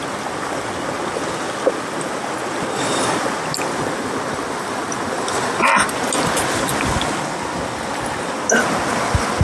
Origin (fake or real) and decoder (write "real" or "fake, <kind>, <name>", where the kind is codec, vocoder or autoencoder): real